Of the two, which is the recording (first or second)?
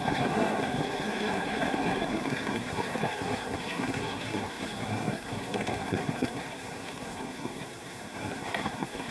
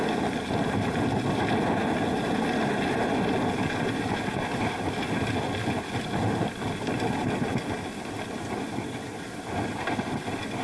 second